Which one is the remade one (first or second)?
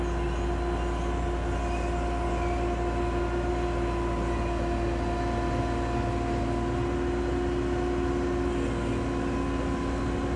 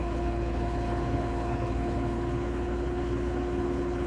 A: second